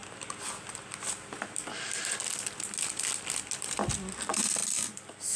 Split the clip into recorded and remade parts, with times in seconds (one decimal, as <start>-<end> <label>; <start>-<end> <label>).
0.0-5.4 recorded